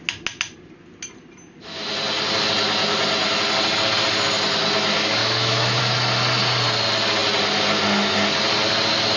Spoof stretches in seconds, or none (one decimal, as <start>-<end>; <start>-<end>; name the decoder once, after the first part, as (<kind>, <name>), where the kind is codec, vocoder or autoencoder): 5.2-5.8 (autoencoder, DAC-VAE)